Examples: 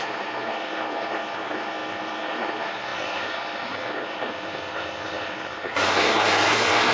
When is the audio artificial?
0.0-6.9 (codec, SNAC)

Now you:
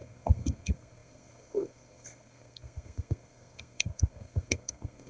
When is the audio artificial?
0.0-5.1 (codec, SNAC)